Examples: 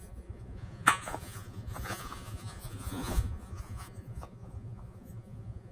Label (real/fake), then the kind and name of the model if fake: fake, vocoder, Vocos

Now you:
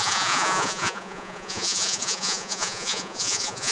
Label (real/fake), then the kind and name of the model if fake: fake, vocoder, Vocos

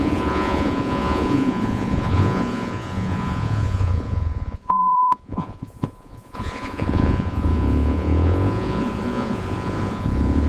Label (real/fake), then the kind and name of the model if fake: fake, vocoder, Vocos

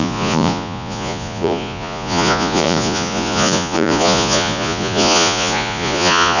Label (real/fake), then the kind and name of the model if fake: fake, vocoder, Vocos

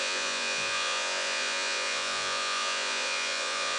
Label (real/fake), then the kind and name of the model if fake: fake, vocoder, Vocos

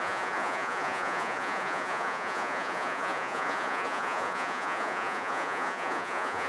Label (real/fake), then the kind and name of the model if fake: fake, vocoder, Vocos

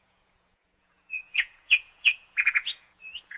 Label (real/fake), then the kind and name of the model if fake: fake, vocoder, Vocos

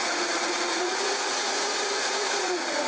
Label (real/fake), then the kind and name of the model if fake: fake, vocoder, Vocos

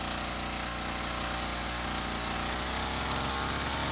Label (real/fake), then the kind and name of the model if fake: real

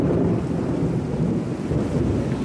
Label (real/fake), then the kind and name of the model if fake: real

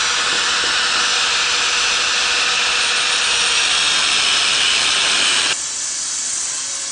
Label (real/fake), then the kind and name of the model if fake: real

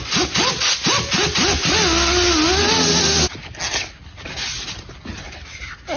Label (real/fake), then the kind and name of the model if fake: real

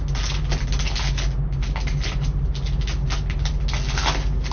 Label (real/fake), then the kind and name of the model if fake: real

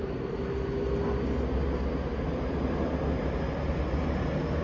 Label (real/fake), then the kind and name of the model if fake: real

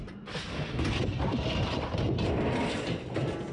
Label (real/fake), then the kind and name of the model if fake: real